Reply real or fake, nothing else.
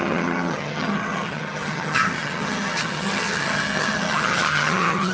fake